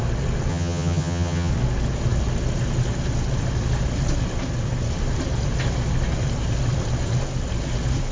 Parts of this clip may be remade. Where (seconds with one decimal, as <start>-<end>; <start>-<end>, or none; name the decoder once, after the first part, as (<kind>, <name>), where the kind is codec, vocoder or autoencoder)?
0.5-1.5 (vocoder, HiFi-GAN)

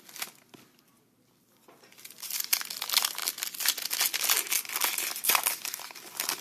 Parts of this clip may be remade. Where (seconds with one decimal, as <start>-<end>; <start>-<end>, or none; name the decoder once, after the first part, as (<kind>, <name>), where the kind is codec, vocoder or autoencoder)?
none

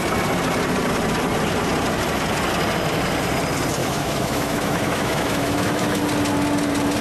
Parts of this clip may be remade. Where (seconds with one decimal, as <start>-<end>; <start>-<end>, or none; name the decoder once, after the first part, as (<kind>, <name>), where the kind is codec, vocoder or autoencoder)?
3.8-6.0 (autoencoder, DAC-VAE)

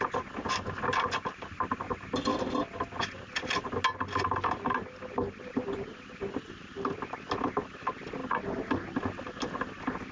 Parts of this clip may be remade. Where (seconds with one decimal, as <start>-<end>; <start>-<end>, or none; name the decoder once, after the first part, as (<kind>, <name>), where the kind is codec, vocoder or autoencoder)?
none

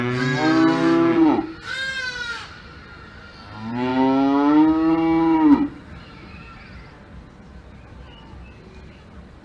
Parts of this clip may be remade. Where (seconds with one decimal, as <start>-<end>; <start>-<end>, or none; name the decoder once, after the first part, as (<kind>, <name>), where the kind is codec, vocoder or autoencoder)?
none

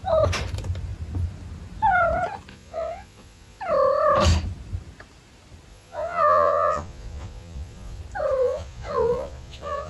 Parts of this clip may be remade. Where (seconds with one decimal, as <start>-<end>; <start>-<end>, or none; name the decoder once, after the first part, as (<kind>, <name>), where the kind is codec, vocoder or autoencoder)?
2.5-3.6 (vocoder, Vocos); 5.7-8.0; 8.4-9.9

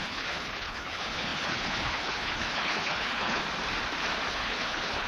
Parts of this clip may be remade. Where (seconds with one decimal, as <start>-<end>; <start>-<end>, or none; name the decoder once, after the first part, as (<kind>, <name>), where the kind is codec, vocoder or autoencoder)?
0.0-3.4 (codec, HILCodec); 4.3-5.1